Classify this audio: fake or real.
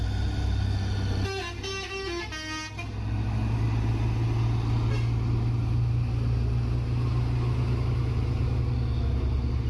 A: real